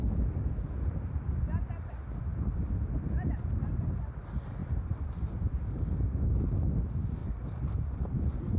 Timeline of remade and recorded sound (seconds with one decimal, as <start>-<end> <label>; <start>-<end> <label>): 0.0-2.3 recorded; 2.3-3.6 remade; 3.6-4.6 recorded; 4.6-5.9 remade; 5.9-7.2 recorded; 7.2-8.1 remade; 8.1-8.6 recorded